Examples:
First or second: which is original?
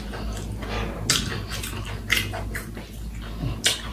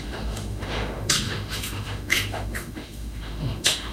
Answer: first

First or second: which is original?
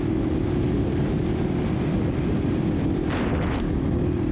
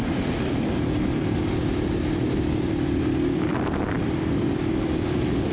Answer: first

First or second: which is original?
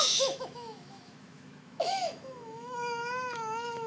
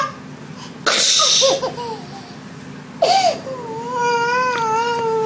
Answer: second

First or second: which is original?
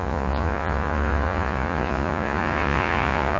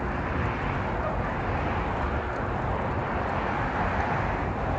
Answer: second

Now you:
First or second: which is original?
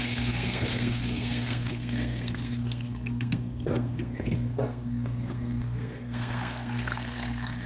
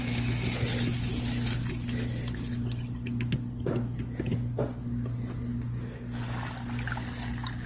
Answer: second